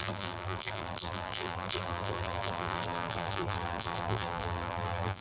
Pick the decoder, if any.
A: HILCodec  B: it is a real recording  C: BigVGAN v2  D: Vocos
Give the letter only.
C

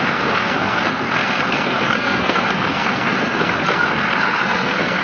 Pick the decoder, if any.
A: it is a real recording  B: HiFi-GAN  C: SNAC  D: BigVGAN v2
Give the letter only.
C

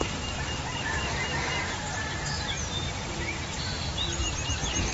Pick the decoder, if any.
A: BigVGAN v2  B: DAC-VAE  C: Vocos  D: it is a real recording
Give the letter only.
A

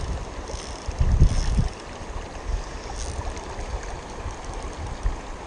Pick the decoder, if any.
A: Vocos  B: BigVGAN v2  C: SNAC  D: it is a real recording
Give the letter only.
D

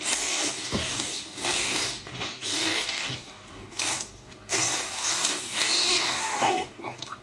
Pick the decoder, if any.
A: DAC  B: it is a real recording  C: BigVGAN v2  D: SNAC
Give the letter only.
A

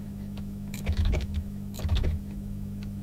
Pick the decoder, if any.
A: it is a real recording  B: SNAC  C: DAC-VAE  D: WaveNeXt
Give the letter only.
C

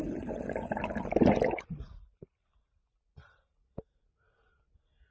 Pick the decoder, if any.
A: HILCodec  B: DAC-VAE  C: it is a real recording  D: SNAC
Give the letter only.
C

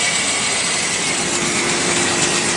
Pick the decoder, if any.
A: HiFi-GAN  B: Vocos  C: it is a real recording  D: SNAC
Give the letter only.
C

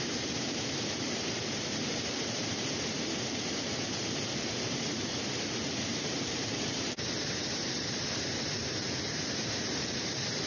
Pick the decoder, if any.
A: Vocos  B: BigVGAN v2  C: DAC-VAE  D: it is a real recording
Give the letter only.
B